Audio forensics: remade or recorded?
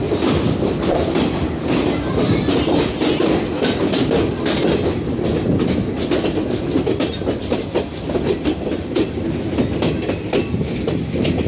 recorded